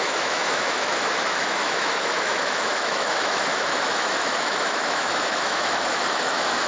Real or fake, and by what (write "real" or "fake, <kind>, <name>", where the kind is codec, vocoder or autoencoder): fake, autoencoder, DAC-VAE